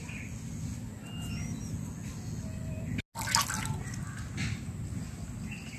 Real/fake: real